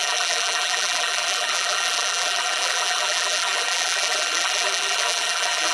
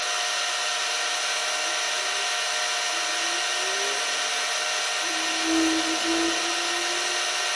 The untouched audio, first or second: second